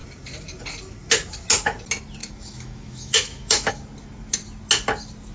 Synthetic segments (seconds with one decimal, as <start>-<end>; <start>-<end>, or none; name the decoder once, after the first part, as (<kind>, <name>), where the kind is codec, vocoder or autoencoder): 2.2-3.7 (autoencoder, DAC-VAE)